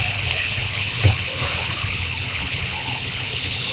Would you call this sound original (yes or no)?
no